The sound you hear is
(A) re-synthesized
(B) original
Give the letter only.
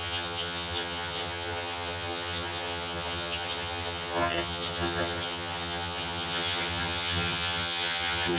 A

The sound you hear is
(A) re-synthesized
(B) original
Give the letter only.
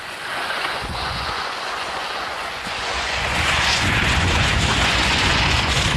A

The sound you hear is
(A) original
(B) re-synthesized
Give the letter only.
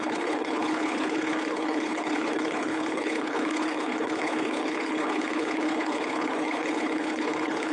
B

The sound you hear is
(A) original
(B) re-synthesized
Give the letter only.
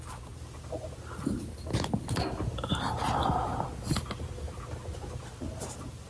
A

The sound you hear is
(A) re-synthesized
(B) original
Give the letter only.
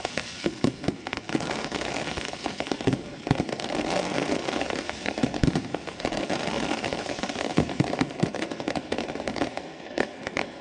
A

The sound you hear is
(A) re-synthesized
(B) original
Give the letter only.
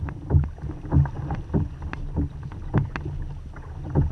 B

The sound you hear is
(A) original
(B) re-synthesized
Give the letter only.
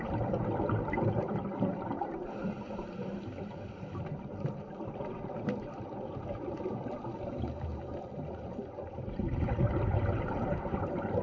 B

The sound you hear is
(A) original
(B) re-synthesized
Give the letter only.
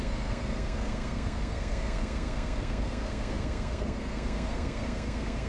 B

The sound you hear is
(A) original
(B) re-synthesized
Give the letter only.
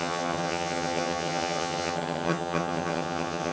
B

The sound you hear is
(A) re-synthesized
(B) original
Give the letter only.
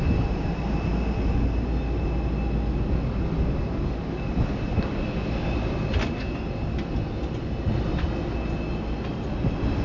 B